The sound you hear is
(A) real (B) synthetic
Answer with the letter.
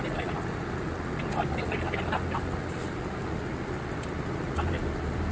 A